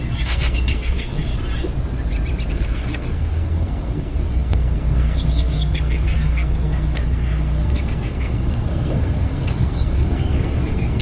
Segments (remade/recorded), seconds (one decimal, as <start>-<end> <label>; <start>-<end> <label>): 0.0-1.3 remade; 1.3-2.5 recorded; 2.5-11.0 remade